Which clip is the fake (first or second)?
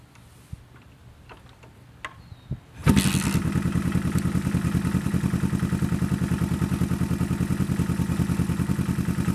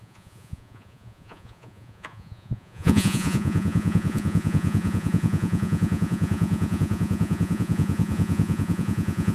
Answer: second